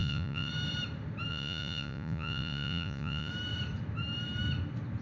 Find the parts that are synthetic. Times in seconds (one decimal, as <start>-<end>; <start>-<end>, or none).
0.0-0.5; 1.3-3.3